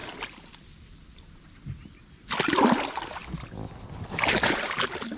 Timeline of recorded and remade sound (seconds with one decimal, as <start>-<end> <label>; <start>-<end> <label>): 0.0-5.2 recorded